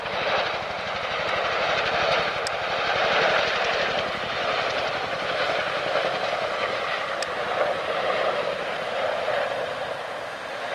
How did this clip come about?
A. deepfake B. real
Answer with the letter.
B